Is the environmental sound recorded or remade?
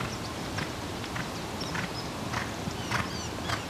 recorded